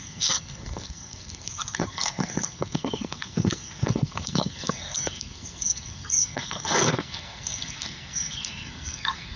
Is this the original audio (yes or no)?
no